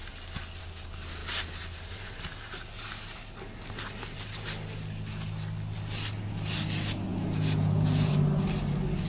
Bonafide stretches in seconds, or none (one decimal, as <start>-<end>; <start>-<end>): 0.0-7.1; 8.1-9.1